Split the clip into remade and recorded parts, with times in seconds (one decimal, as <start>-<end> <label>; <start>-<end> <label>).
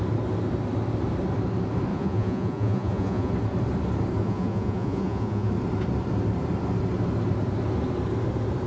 0.0-1.9 recorded; 1.9-3.3 remade; 3.3-4.2 recorded; 4.2-5.5 remade; 5.5-8.7 recorded